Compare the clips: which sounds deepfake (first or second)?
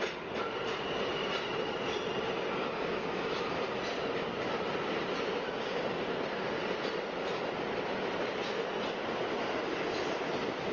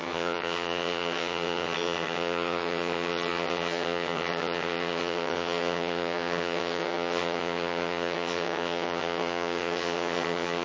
second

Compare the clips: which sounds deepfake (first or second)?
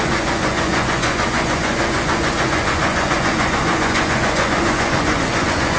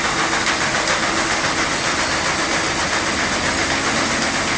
first